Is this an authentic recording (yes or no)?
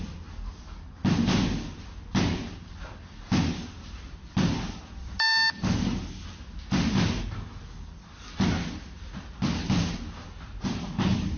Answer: yes